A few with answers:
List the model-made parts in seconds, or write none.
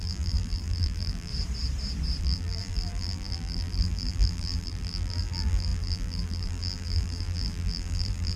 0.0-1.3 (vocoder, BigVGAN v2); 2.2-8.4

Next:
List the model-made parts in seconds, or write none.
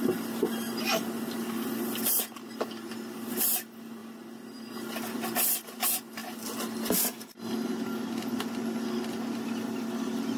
none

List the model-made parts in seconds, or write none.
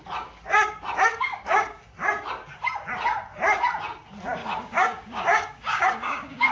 1.1-1.8 (codec, DAC); 4.4-6.5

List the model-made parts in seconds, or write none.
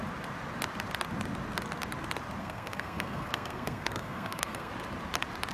2.4-4.7 (codec, SNAC)